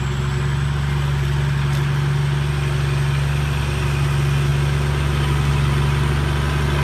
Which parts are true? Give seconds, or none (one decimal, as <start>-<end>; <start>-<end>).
0.0-6.8